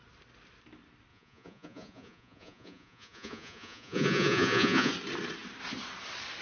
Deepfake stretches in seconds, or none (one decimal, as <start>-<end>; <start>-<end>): 1.1-4.9